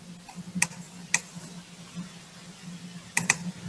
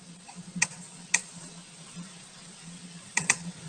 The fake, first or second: second